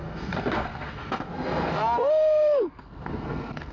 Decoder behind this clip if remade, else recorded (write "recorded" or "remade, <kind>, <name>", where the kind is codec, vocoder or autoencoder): remade, codec, SNAC